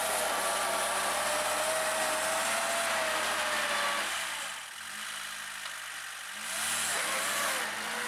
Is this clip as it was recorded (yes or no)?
yes